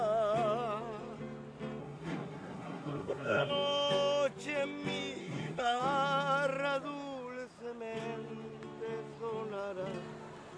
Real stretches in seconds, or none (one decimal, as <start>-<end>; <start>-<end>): 0.0-1.8; 3.5-5.2; 5.8-10.6